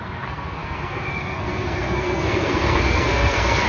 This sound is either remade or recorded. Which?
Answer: remade